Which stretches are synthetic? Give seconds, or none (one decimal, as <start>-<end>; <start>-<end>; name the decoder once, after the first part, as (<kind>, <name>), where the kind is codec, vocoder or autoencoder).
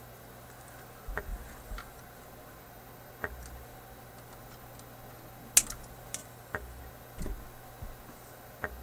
1.3-2.0 (vocoder, BigVGAN v2); 6.2-6.8